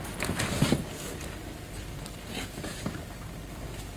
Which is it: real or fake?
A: real